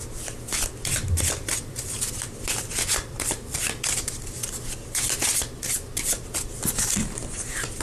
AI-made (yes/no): yes